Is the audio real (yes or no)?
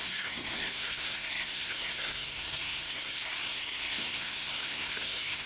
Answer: no